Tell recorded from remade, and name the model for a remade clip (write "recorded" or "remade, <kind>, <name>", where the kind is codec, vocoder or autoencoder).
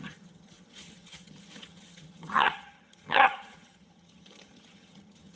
remade, vocoder, HiFi-GAN